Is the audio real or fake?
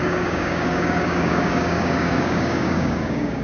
fake